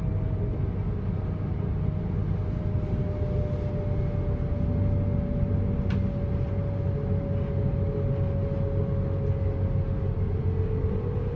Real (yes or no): yes